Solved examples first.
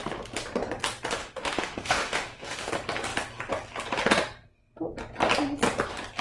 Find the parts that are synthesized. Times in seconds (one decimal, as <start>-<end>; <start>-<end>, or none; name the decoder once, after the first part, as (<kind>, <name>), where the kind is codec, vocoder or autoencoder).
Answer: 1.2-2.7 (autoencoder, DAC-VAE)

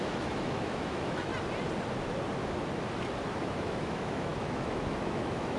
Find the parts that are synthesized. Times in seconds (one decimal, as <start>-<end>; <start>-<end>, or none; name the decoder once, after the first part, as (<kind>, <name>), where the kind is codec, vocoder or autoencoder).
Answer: 0.0-1.3 (autoencoder, DAC-VAE); 3.4-5.6

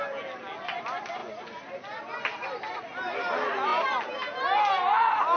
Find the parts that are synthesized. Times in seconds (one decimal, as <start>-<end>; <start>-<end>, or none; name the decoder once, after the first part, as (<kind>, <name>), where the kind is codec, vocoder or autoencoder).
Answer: none